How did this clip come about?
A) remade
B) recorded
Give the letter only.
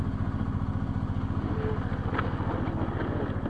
B